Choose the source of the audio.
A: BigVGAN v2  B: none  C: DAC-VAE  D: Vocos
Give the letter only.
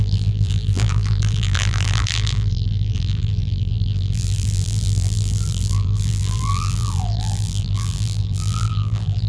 A